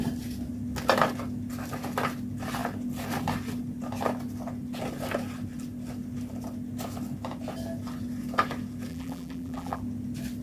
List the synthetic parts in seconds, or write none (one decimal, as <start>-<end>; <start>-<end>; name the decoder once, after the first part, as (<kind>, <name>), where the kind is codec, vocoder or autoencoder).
8.9-9.8 (vocoder, BigVGAN v2)